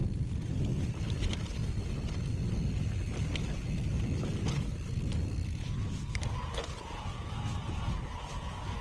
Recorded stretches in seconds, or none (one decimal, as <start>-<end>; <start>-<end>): 1.6-5.6